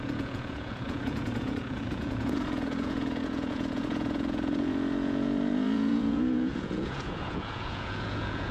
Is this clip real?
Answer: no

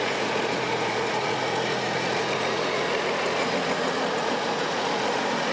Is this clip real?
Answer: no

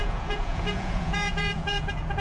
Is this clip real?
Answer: no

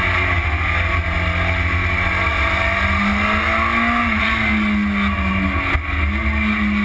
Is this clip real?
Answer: yes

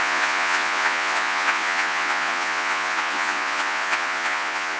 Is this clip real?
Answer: no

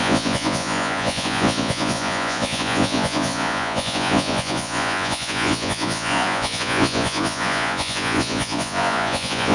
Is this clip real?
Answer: no